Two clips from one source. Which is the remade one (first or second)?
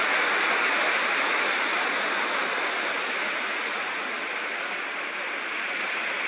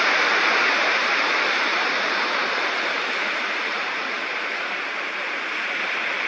second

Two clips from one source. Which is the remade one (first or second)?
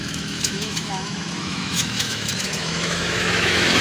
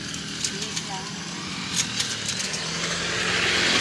first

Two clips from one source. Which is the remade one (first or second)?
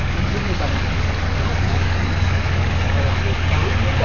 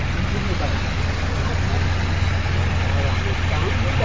first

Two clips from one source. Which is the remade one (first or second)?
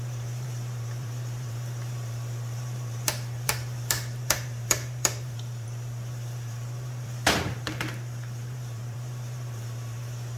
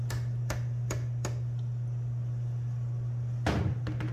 first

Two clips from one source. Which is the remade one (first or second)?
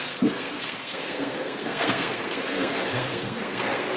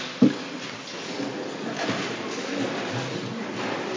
first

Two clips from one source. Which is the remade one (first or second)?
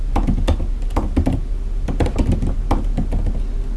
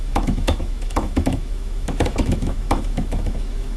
second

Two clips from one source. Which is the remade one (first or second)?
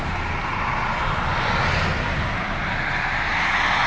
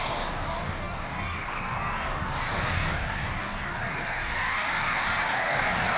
second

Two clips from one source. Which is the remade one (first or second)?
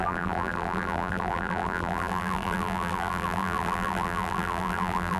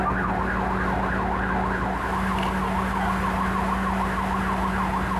first